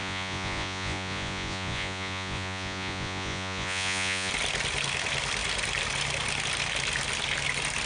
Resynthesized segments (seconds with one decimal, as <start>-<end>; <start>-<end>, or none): 0.0-4.3